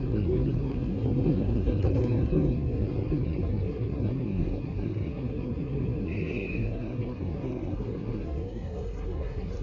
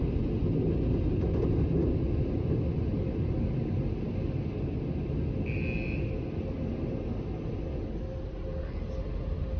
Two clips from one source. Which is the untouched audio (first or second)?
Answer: second